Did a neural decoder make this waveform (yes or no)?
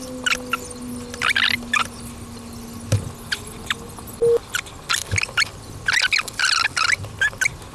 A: no